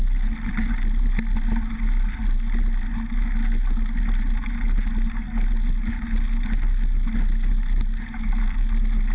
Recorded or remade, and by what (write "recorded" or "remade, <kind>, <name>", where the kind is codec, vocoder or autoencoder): recorded